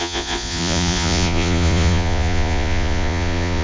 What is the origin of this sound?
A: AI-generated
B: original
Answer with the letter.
A